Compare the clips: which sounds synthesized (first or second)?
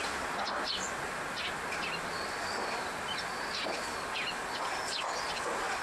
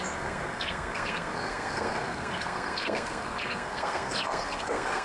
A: second